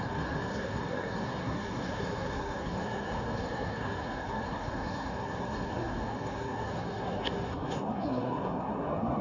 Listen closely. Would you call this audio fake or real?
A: fake